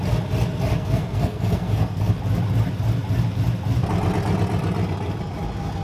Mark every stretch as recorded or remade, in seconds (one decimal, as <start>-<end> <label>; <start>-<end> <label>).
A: 0.0-0.7 recorded; 0.7-2.1 remade; 2.1-5.8 recorded